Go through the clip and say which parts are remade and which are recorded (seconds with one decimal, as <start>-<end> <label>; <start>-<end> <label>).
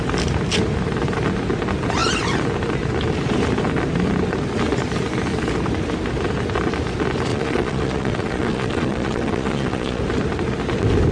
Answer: 0.0-7.3 recorded; 7.3-10.0 remade; 10.0-11.1 recorded